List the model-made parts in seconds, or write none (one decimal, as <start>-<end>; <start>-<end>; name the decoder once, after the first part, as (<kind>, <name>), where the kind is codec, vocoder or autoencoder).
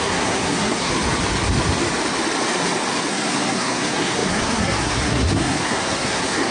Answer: 0.0-0.9 (codec, SNAC); 3.1-6.5